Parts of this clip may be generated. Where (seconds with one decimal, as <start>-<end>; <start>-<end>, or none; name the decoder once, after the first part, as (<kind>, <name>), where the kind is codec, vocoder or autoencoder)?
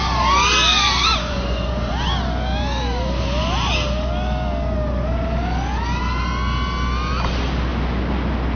1.1-1.9 (vocoder, Vocos)